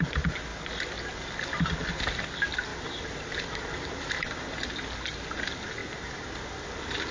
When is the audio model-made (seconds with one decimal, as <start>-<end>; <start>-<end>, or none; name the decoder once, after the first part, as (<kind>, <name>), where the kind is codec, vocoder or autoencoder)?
2.7-4.4 (vocoder, BigVGAN v2); 5.8-6.3